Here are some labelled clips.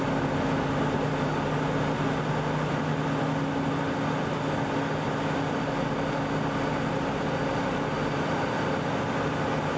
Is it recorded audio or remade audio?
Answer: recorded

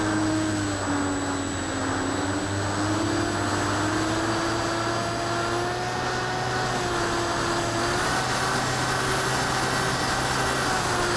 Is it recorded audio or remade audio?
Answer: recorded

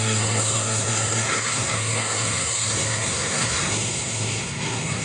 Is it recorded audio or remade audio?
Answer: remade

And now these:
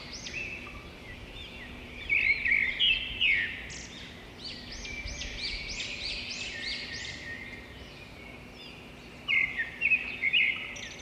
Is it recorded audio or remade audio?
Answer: recorded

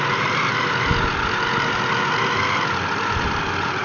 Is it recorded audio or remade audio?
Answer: recorded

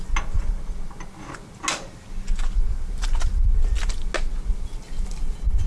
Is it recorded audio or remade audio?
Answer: recorded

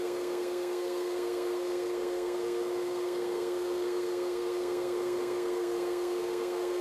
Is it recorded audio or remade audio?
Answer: remade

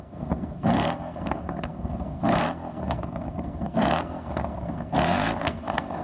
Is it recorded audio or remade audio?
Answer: remade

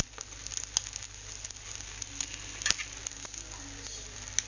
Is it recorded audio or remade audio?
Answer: recorded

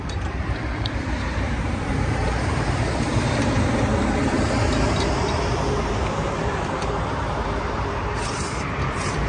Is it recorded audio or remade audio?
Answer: remade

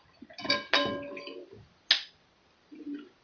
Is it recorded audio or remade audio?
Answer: recorded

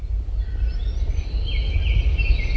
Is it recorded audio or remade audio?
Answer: recorded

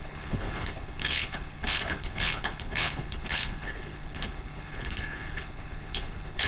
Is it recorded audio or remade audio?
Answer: remade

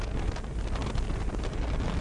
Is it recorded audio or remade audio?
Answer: recorded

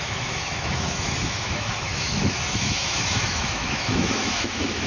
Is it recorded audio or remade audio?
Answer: remade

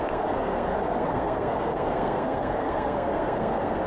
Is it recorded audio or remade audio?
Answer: remade